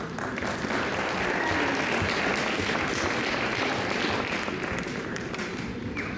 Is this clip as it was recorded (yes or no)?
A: yes